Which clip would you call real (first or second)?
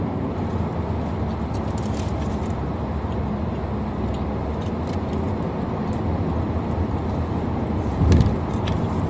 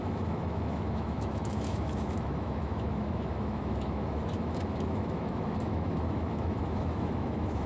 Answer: first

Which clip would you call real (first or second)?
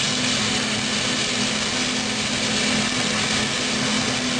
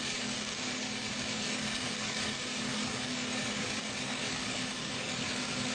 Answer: first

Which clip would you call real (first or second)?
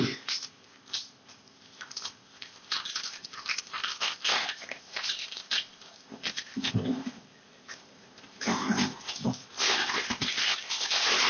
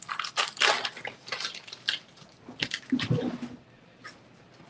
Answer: second